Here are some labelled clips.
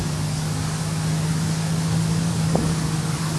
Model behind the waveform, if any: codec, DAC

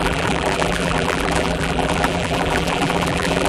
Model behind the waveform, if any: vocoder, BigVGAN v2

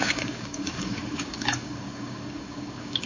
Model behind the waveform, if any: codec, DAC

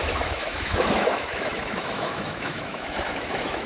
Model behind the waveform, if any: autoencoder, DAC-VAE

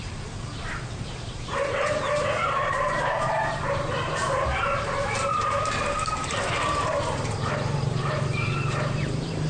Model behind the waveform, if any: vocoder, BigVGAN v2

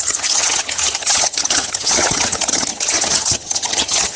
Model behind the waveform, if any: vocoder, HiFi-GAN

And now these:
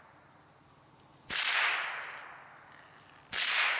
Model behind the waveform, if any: none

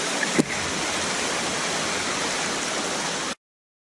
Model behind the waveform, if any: none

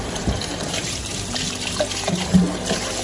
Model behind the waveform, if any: vocoder, BigVGAN v2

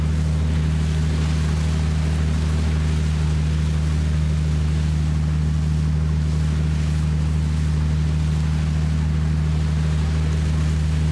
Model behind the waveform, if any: none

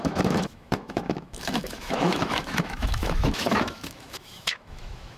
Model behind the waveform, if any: autoencoder, DAC-VAE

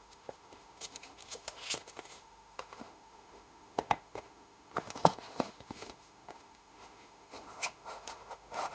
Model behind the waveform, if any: autoencoder, DAC-VAE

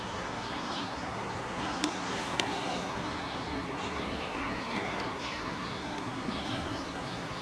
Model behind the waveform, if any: codec, SNAC